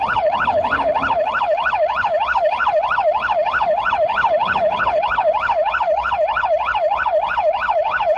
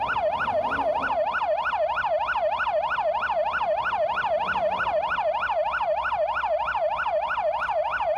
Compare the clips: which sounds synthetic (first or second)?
first